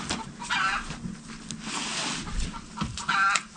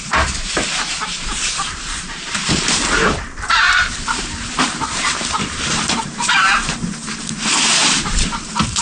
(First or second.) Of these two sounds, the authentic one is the first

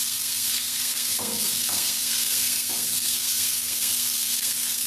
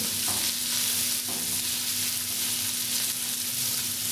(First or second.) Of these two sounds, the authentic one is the second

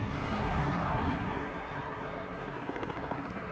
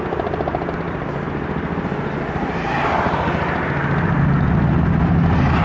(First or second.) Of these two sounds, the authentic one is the second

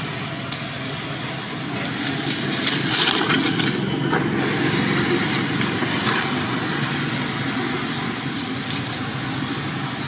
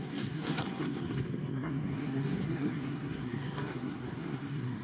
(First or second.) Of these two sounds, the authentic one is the first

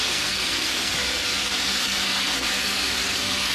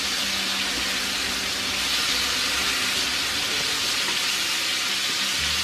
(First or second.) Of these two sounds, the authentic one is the second